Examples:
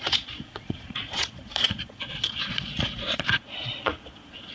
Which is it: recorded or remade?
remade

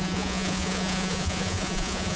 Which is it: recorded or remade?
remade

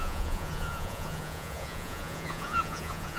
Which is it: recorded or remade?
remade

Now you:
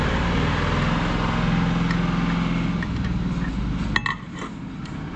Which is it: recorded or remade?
recorded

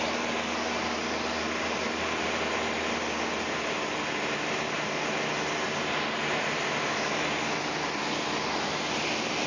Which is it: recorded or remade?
recorded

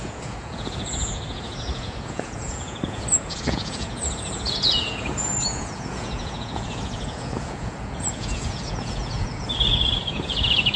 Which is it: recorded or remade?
remade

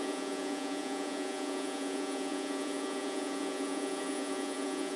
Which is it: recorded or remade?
remade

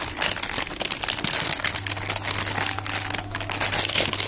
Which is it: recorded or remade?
recorded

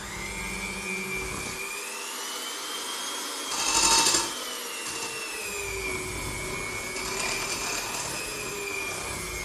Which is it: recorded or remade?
recorded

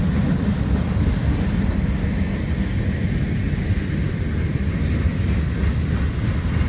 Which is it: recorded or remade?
recorded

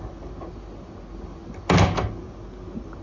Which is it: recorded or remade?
recorded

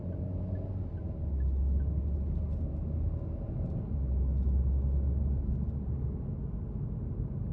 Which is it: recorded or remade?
recorded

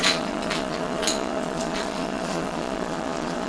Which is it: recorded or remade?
remade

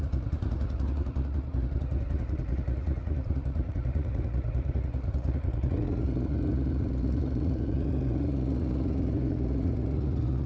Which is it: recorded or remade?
remade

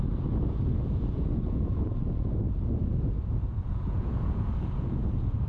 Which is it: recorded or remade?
remade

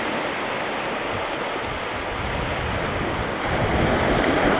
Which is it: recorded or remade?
recorded